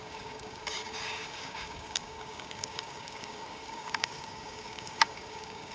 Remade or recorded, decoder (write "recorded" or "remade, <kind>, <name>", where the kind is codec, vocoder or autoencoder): remade, codec, DAC